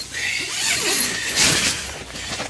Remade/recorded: remade